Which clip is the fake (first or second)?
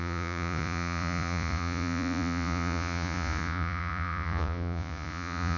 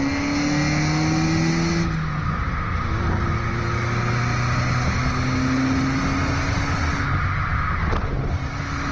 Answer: first